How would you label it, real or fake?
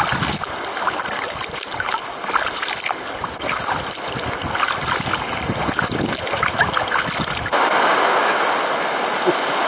real